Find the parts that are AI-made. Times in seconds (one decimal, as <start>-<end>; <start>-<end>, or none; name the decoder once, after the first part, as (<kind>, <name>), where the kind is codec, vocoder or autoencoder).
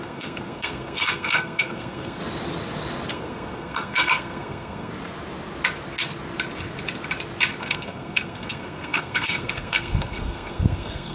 0.0-2.2 (codec, SNAC); 3.1-4.9; 7.6-11.1